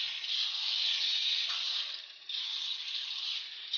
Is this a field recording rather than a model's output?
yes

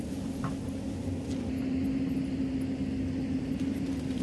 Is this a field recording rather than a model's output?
yes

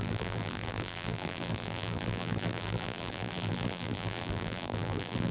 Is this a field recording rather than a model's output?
no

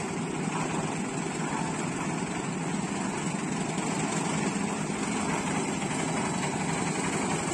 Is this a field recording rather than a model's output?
no